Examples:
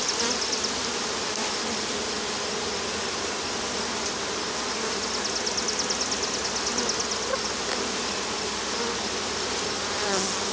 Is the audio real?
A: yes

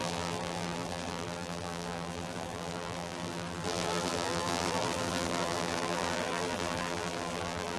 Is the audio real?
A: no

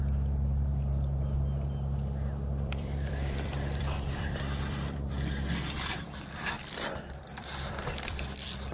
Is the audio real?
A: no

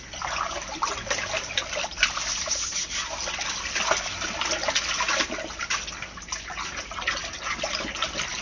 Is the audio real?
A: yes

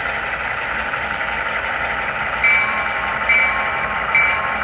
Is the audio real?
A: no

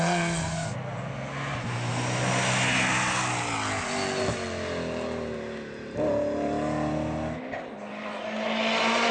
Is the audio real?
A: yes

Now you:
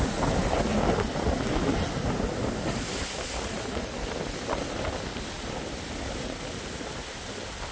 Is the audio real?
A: yes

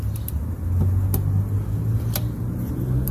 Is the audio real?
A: yes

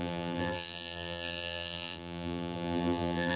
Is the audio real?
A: no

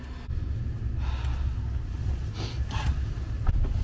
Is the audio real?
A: yes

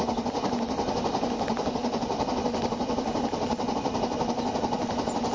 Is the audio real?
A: yes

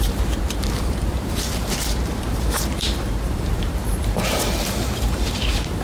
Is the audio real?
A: no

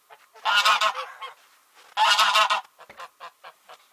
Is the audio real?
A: yes